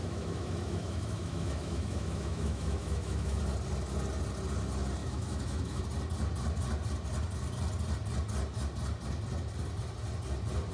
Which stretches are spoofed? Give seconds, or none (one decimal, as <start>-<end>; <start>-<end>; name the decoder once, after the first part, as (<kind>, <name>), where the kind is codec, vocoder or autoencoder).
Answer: 0.0-3.4 (autoencoder, DAC-VAE); 5.0-5.8